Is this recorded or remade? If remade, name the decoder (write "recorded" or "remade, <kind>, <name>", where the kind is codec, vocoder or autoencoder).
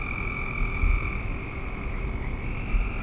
recorded